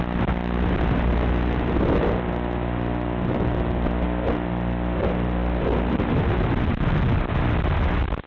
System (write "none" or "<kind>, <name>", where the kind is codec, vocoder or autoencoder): none